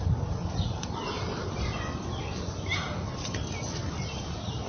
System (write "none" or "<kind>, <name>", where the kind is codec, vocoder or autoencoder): none